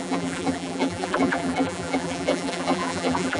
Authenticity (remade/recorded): remade